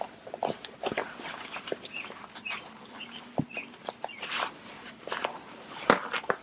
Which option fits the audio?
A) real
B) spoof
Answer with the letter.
A